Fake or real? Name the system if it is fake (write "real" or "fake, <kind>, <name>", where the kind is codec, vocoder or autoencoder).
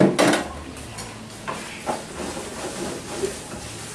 real